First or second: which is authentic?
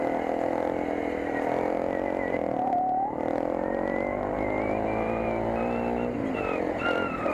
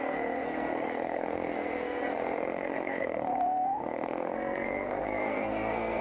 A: first